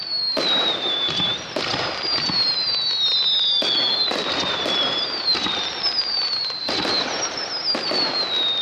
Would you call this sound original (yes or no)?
yes